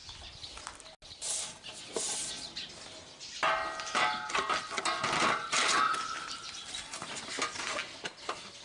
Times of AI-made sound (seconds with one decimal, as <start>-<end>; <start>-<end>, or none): none